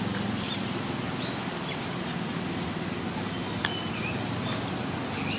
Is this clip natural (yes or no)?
yes